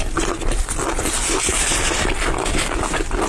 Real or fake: real